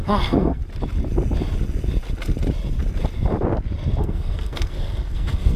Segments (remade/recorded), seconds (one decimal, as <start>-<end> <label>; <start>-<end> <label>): 0.0-0.6 remade; 0.6-4.0 recorded; 4.0-5.6 remade